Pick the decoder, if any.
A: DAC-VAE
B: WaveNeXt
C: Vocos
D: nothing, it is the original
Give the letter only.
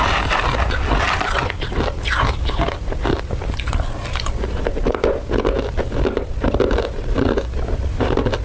D